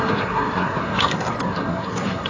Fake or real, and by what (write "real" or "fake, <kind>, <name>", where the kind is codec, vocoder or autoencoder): fake, codec, SNAC